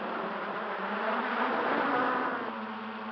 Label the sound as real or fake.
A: real